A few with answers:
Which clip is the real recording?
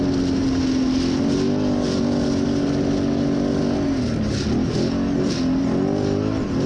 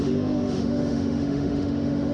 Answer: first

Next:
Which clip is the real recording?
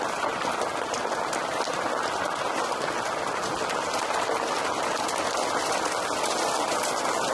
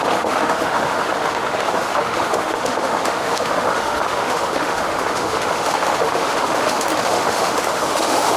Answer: first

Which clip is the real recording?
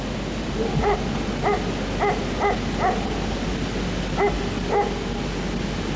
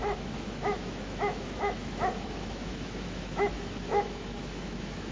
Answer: first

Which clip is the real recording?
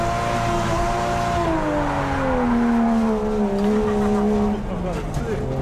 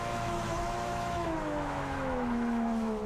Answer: first